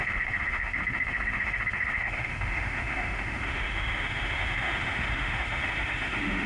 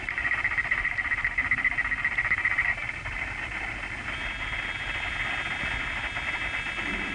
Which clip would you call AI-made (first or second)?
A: first